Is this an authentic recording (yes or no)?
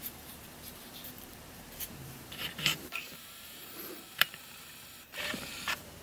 no